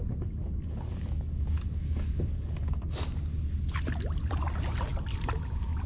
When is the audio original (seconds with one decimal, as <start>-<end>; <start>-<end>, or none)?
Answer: 0.0-0.4; 2.8-5.9